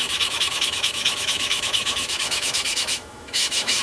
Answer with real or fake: fake